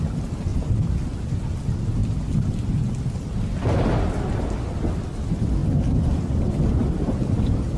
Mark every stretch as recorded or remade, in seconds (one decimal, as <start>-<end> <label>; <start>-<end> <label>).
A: 0.0-7.8 recorded

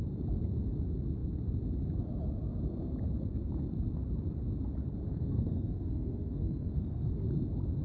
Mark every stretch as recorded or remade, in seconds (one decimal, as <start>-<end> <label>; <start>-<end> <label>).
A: 0.0-5.1 recorded; 5.1-7.1 remade; 7.1-7.8 recorded

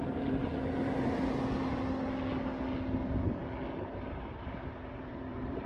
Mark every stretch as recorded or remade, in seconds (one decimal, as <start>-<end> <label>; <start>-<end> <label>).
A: 0.0-0.4 remade; 0.4-3.8 recorded; 3.8-5.7 remade

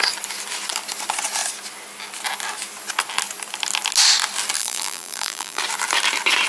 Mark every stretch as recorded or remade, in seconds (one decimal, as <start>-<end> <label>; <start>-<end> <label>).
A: 0.0-4.6 recorded; 4.6-5.6 remade; 5.6-6.5 recorded